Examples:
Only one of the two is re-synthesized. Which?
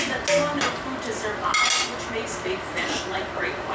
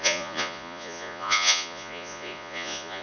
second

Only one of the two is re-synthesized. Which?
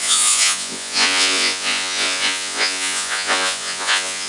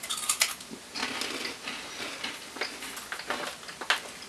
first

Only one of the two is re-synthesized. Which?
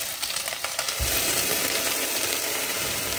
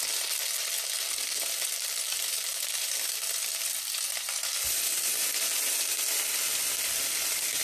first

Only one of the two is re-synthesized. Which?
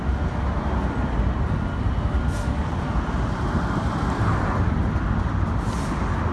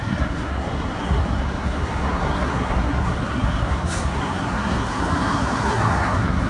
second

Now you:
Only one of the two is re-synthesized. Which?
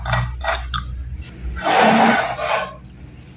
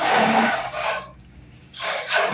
second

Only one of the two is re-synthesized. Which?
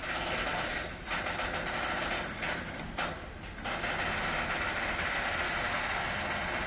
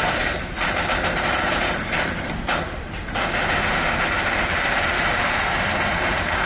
second